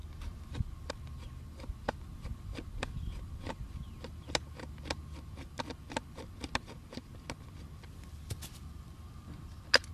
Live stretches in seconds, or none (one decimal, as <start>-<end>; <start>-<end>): 0.0-9.9